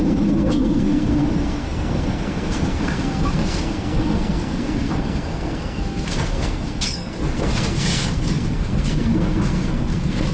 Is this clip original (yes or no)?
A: no